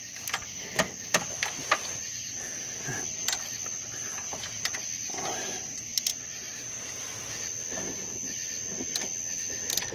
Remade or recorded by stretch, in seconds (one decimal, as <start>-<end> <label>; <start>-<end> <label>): 0.0-9.9 recorded